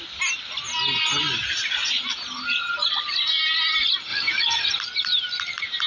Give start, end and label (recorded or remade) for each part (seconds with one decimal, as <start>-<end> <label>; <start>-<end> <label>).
0.0-5.9 recorded